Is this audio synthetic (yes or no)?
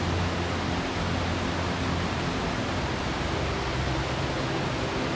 no